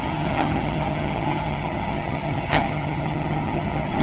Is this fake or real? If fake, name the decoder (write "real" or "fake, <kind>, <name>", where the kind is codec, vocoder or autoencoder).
fake, vocoder, HiFi-GAN